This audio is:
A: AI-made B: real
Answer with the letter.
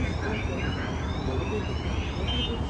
B